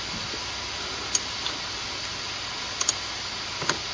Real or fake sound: real